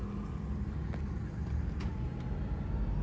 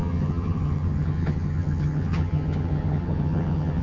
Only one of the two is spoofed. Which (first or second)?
second